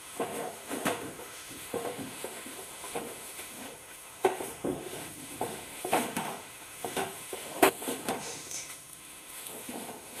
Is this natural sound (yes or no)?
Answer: no